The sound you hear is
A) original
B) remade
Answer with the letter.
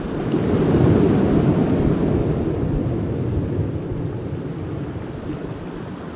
A